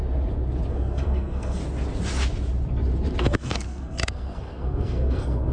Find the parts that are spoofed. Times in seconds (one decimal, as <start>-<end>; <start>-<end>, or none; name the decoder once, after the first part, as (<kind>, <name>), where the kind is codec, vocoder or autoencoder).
0.7-1.6 (codec, SNAC); 3.2-5.5